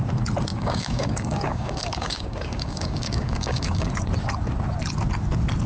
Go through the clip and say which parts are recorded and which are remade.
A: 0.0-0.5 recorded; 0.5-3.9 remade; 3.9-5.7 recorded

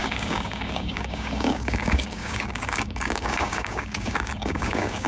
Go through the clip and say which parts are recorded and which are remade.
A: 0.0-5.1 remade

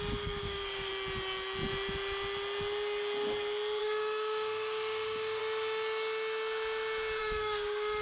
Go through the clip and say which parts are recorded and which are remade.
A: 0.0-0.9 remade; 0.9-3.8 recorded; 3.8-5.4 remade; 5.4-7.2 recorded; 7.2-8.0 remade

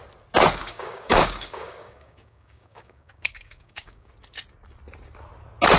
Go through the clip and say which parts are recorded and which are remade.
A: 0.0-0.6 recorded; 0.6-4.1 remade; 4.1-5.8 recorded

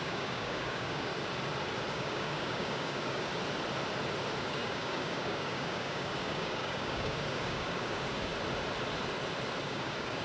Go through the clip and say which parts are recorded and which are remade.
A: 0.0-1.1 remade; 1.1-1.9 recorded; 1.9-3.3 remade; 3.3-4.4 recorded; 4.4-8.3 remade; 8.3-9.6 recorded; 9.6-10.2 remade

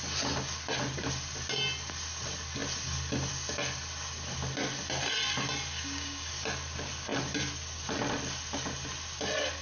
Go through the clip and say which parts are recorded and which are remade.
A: 0.0-5.7 recorded; 5.7-6.3 remade; 6.3-9.6 recorded